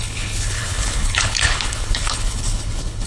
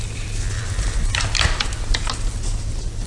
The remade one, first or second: first